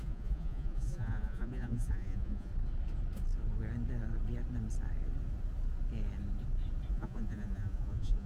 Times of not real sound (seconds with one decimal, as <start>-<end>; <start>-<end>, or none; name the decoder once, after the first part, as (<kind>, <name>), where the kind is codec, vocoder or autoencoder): 0.0-2.5 (vocoder, Vocos); 6.9-8.3